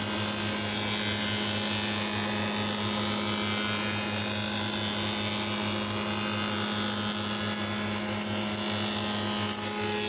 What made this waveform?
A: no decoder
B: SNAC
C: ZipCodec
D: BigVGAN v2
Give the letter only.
A